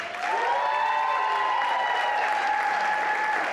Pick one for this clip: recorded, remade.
recorded